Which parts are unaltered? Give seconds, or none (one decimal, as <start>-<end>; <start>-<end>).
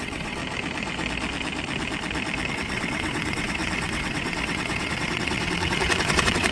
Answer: 0.4-2.5